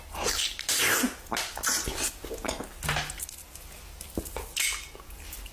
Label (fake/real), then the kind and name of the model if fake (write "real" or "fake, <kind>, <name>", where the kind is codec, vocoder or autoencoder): real